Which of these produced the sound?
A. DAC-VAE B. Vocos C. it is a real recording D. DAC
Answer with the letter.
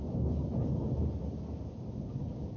C